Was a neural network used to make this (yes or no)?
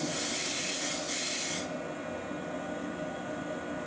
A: no